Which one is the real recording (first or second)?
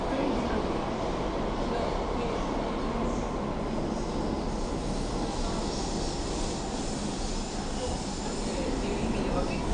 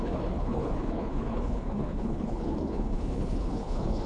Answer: first